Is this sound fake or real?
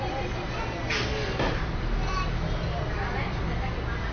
real